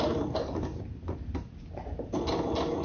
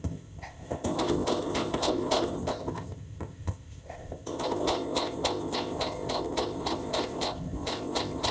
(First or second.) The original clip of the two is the first